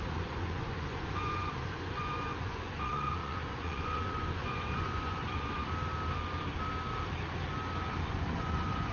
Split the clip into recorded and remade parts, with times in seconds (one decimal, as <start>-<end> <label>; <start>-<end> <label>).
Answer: 0.0-5.6 remade; 5.6-8.1 recorded; 8.1-8.9 remade